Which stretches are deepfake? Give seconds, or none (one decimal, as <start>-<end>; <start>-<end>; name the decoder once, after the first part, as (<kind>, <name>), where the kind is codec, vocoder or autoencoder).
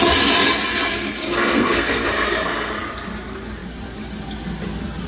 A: 0.9-2.7 (codec, SNAC)